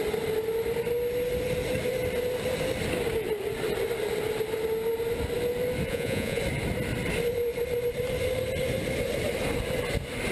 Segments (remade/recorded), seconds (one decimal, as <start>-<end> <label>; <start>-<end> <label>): 0.0-5.9 recorded; 5.9-6.4 remade; 6.4-10.3 recorded